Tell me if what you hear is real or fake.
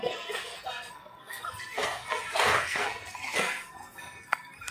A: fake